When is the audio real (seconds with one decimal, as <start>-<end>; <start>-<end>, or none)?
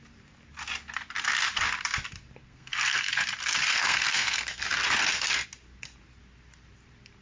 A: 0.0-2.4; 3.1-3.7; 4.6-7.2